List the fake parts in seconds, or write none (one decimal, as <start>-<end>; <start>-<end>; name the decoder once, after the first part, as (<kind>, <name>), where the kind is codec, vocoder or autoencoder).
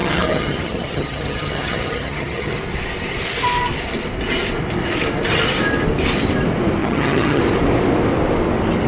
0.0-2.6 (vocoder, HiFi-GAN); 6.8-7.4